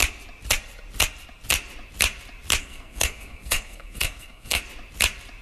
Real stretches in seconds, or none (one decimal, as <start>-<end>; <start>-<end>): 0.0-2.6; 4.6-5.4